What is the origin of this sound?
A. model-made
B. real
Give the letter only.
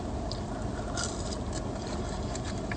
B